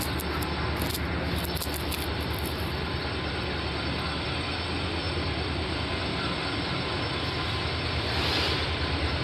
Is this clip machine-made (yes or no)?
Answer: no